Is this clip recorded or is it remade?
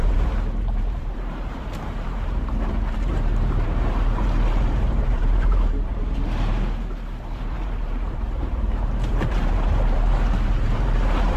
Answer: remade